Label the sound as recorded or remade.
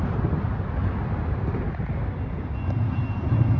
recorded